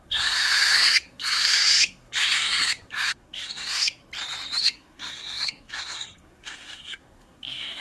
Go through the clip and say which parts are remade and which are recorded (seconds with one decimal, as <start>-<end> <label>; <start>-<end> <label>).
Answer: 0.0-4.0 remade; 4.0-4.6 recorded; 4.6-7.8 remade